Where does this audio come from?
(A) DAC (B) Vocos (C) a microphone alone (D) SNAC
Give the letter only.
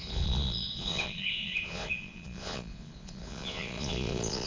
B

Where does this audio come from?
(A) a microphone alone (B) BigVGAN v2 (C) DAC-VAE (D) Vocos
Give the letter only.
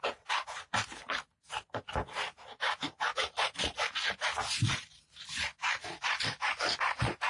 B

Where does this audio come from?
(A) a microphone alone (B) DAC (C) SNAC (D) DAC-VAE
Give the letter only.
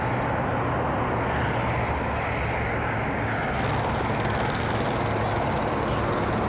A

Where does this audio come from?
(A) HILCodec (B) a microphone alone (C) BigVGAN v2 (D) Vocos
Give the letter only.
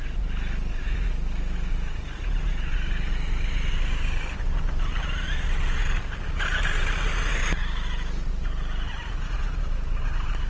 B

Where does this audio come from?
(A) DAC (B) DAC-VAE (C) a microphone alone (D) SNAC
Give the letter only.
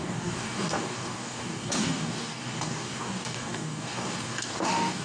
A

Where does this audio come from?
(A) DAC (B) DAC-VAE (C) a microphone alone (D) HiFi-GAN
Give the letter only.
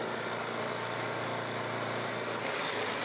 C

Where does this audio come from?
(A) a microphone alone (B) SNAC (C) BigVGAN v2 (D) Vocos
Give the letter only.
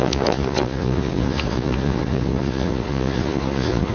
D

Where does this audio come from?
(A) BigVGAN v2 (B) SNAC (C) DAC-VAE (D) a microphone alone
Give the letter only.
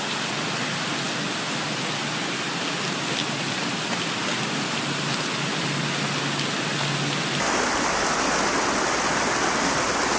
D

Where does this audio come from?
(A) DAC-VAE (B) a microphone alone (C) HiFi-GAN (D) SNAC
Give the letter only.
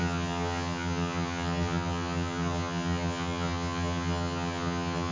C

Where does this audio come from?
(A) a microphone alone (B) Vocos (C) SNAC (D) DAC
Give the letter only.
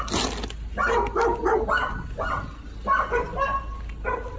A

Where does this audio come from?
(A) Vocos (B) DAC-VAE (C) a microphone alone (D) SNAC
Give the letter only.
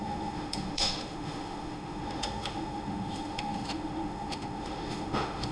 B